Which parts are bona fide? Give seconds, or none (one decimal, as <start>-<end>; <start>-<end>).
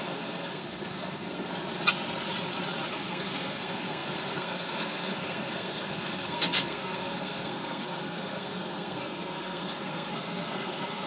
1.5-2.9